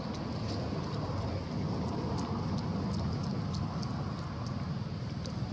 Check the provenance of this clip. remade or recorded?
recorded